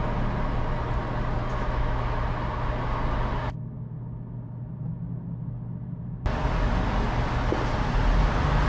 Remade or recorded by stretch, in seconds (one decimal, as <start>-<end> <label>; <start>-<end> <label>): 0.0-1.5 recorded; 1.5-2.2 remade; 2.2-8.7 recorded